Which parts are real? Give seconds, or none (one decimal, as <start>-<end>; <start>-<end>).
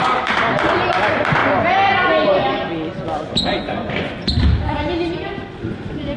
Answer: 0.0-3.2; 4.4-5.4